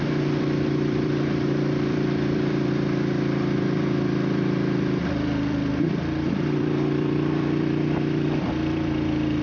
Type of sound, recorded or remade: remade